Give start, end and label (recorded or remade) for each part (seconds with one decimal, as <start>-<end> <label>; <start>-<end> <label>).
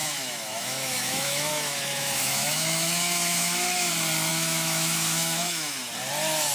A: 0.0-3.9 remade; 3.9-4.3 recorded; 4.3-5.8 remade; 5.8-6.5 recorded